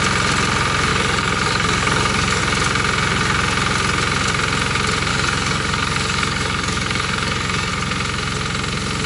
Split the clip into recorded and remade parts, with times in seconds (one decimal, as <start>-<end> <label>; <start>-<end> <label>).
0.0-0.9 recorded; 0.9-2.4 remade; 2.4-5.1 recorded; 5.1-7.7 remade; 7.7-9.1 recorded